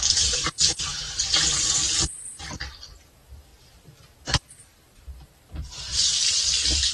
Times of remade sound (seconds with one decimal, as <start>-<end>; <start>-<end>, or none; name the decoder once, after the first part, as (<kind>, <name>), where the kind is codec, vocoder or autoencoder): 0.0-0.9 (vocoder, BigVGAN v2); 2.0-6.9